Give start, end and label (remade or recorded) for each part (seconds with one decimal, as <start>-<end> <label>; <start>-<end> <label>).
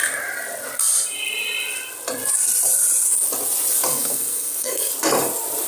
0.0-3.9 recorded; 3.9-4.9 remade; 4.9-5.7 recorded